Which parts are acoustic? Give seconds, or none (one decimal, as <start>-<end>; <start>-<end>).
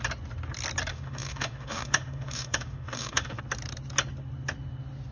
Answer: 0.0-0.9; 3.4-5.1